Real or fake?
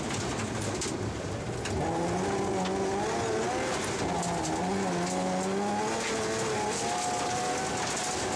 real